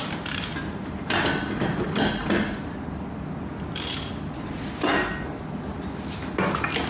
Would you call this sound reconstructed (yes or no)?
no